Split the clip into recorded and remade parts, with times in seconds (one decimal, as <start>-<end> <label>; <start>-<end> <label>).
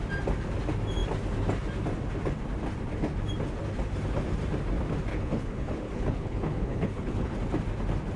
0.0-5.1 recorded; 5.1-7.3 remade; 7.3-8.2 recorded